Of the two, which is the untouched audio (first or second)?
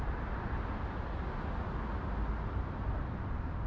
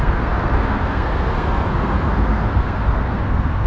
first